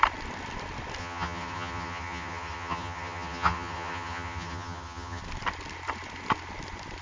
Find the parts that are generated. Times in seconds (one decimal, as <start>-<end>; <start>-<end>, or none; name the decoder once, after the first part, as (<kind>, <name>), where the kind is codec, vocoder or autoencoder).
1.0-5.2 (vocoder, HiFi-GAN)